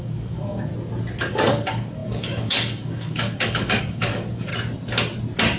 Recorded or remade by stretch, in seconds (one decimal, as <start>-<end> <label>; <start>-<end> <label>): 0.0-0.7 remade; 0.7-1.3 recorded; 1.3-4.5 remade; 4.5-5.6 recorded